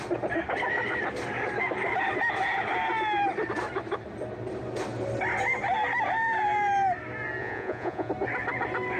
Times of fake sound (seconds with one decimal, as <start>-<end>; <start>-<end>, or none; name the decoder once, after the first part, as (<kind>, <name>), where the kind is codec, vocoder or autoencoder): 7.4-8.1 (vocoder, Vocos)